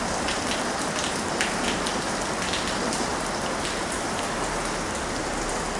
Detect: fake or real real